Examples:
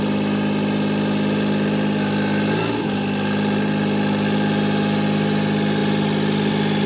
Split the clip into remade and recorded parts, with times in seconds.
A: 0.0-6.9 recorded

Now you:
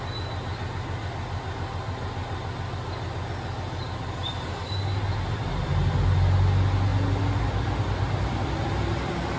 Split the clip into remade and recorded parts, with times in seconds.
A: 0.0-9.4 recorded

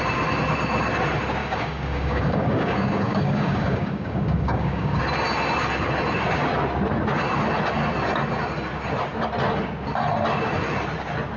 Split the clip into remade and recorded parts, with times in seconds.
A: 0.0-1.4 recorded; 1.4-5.0 remade; 5.0-11.4 recorded

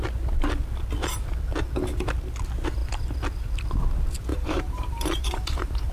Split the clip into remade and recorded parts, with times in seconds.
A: 0.0-4.3 recorded; 4.3-5.9 remade